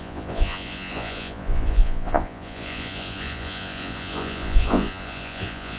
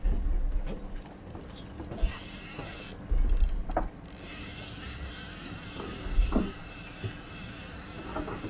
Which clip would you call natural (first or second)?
second